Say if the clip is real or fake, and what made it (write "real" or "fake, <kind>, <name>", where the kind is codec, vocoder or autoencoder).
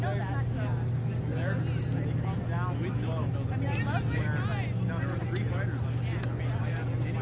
real